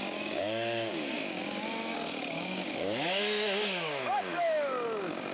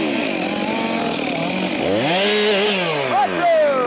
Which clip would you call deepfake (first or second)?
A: first